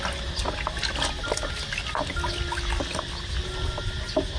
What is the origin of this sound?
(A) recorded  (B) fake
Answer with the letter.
A